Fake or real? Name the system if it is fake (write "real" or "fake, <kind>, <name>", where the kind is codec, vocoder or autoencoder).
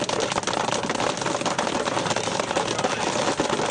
real